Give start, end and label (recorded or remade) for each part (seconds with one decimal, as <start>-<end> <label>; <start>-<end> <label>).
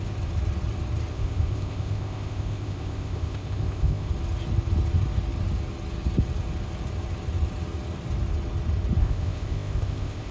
0.0-1.1 recorded; 1.1-4.1 remade; 4.1-9.0 recorded; 9.0-10.3 remade